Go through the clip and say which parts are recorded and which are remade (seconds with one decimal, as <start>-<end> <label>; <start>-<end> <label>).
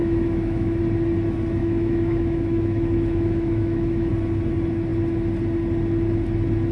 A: 0.0-0.8 remade; 0.8-1.6 recorded; 1.6-4.1 remade; 4.1-6.7 recorded